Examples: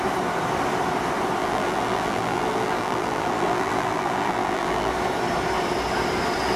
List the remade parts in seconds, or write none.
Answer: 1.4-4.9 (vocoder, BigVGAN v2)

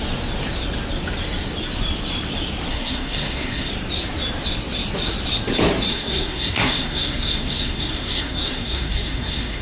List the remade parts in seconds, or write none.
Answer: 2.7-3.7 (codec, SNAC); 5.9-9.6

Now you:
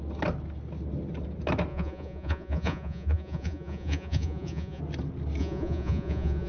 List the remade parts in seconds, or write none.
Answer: 1.7-4.8 (vocoder, Vocos); 5.4-6.5

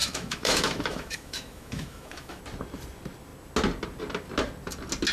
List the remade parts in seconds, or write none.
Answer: 0.0-2.4 (autoencoder, DAC-VAE)

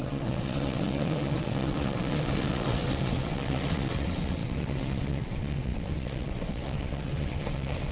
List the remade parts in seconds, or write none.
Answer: 0.0-7.9 (vocoder, WaveNeXt)

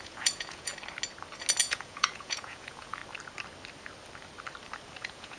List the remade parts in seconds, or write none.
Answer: 0.0-0.7 (vocoder, Vocos); 1.6-3.0; 5.0-5.4

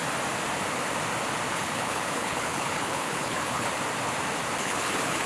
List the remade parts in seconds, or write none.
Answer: 1.5-3.7 (codec, HILCodec); 4.6-5.3